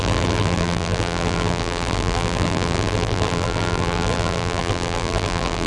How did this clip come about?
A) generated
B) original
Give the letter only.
A